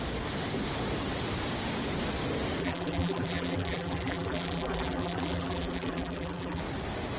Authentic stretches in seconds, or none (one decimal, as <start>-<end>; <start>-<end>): 0.0-2.6; 6.6-7.2